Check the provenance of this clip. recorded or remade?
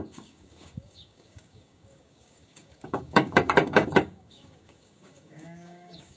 remade